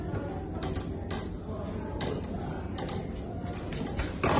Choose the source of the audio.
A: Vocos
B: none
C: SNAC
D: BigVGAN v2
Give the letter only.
B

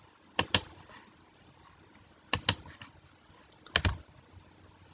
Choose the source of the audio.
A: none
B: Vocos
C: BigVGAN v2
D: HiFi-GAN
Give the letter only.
A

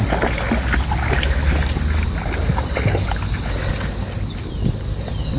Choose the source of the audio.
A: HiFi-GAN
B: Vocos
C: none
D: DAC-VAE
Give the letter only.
C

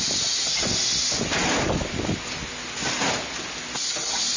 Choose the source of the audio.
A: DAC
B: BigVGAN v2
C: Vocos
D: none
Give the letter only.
D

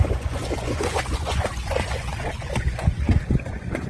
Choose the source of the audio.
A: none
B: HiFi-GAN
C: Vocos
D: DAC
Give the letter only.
C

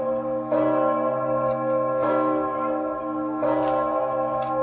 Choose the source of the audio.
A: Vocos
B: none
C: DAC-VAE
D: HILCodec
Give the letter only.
B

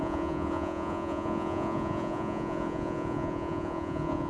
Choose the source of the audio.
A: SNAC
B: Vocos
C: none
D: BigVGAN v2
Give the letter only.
B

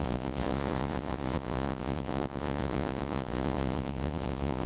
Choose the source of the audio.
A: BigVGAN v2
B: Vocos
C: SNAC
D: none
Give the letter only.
B